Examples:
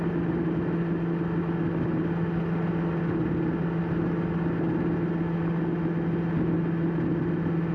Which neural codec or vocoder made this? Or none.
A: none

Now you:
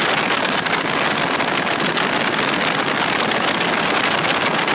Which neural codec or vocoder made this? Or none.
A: none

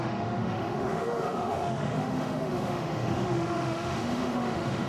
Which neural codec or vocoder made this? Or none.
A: autoencoder, DAC-VAE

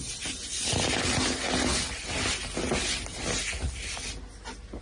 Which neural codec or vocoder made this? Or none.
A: none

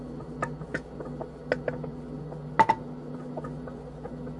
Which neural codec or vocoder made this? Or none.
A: none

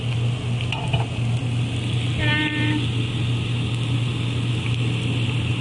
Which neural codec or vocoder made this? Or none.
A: none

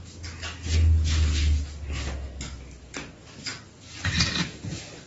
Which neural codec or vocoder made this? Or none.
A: none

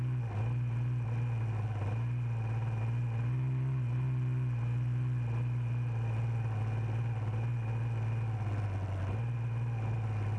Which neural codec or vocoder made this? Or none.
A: none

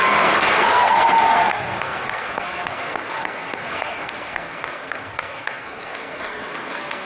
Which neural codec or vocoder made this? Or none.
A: codec, SNAC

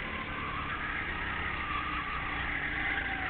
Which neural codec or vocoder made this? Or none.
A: none